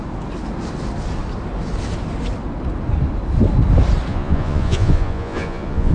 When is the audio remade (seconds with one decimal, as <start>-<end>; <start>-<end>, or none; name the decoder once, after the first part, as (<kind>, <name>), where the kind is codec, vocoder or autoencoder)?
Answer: 4.1-5.9 (vocoder, Vocos)